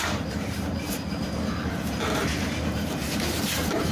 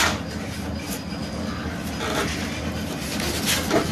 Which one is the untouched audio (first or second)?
second